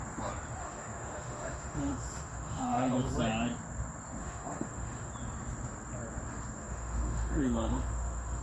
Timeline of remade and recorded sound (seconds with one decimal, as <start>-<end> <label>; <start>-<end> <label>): 0.0-0.6 recorded; 0.6-3.1 remade; 3.1-4.2 recorded; 4.2-5.1 remade; 5.1-6.6 recorded; 6.6-8.4 remade